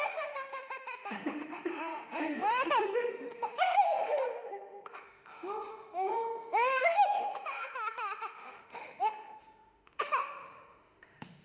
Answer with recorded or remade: remade